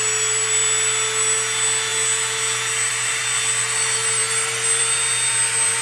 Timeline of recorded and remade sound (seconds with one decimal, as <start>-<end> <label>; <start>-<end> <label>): 0.0-5.8 recorded